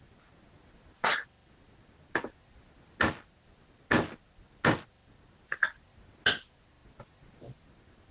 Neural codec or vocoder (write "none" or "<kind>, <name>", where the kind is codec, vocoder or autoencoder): none